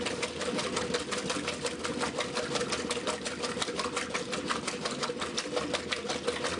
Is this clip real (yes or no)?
yes